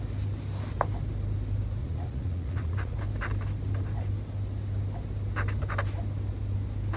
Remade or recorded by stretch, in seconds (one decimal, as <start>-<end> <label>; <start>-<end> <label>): 0.0-1.8 recorded; 1.8-3.0 remade; 3.0-7.0 recorded